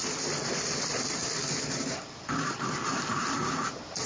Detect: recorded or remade remade